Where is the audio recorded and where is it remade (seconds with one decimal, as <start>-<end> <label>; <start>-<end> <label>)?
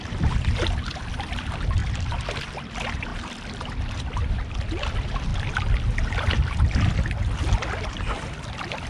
0.0-1.8 remade; 1.8-2.6 recorded; 2.6-5.3 remade; 5.3-7.6 recorded; 7.6-8.9 remade